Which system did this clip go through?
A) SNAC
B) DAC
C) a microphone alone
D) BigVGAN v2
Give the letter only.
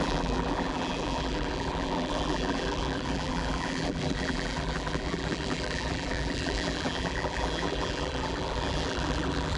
D